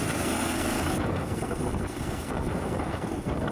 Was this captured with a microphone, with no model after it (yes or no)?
no